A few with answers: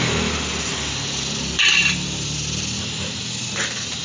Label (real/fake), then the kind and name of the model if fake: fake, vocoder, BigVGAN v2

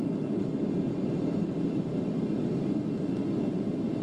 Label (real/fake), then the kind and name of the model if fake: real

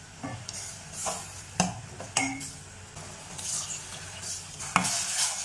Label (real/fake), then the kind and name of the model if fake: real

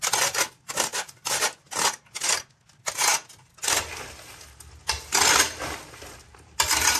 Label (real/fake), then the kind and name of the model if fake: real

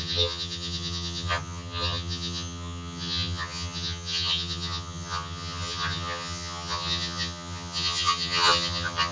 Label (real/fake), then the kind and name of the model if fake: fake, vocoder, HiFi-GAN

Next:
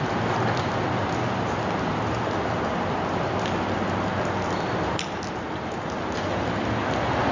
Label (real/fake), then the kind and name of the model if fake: real